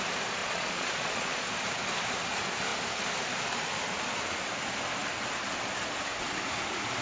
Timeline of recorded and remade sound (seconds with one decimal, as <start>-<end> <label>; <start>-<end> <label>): 0.0-0.4 recorded; 0.4-1.5 remade; 1.5-7.0 recorded